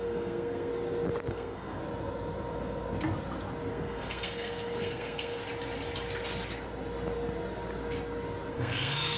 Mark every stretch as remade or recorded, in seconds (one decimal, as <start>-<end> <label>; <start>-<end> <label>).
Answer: 0.0-0.7 remade; 0.7-1.3 recorded; 1.3-1.8 remade; 1.8-3.7 recorded; 3.7-5.4 remade; 5.4-8.5 recorded; 8.5-9.2 remade